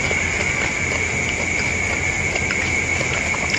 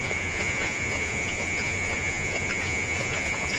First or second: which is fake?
second